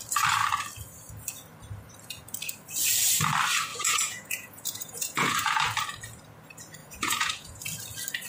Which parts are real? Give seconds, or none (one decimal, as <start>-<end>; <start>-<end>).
0.0-3.7; 5.6-6.8; 7.6-8.3